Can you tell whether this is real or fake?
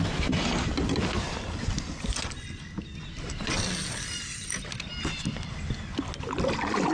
real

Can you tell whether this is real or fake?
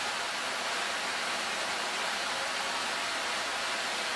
real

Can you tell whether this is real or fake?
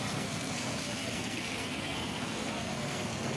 fake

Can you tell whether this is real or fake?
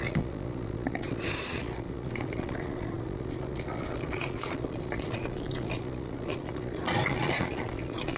fake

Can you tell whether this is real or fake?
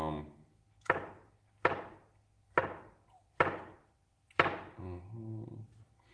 real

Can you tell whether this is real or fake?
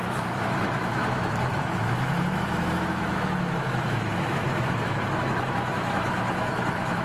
fake